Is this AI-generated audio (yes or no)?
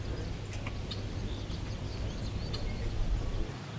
no